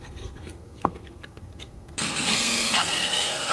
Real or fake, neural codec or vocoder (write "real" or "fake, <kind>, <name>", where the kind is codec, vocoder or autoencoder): fake, codec, SNAC